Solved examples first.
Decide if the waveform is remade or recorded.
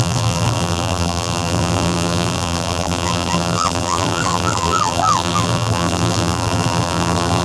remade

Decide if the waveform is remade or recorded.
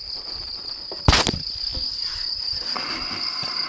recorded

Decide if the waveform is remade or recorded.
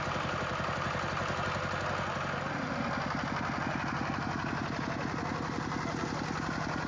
recorded